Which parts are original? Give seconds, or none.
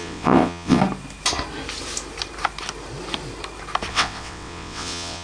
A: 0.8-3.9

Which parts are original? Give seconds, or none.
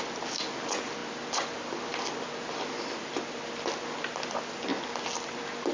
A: 0.0-5.7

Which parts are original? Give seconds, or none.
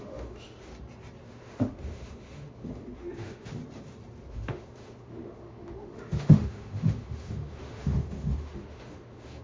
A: 0.7-1.2; 3.6-4.3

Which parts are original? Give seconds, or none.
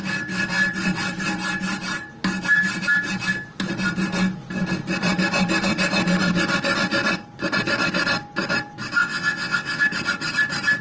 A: 0.0-9.0; 9.8-10.8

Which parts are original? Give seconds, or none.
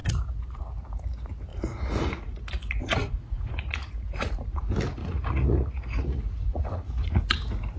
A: 0.6-1.5; 2.4-2.8; 4.6-5.0; 7.2-7.8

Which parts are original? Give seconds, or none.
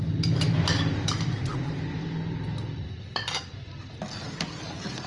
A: 0.0-5.1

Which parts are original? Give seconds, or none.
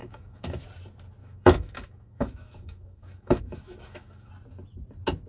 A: 0.6-1.2; 4.3-5.3